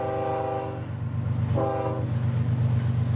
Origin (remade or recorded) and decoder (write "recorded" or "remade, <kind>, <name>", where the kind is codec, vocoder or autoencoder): recorded